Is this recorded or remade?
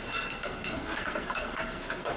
remade